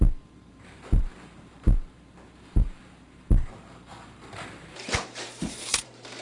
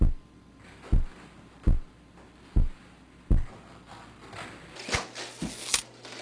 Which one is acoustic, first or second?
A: second